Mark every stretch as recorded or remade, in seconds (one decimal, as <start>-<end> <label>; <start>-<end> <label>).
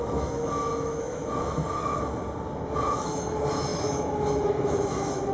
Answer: 0.0-2.2 remade; 2.2-2.9 recorded; 2.9-5.3 remade